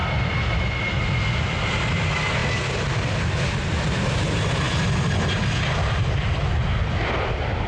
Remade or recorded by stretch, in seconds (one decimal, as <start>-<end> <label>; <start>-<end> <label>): 0.0-7.7 recorded